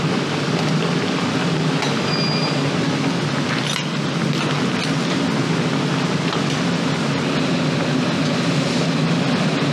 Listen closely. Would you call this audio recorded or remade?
recorded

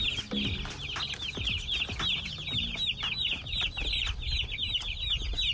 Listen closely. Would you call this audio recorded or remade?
recorded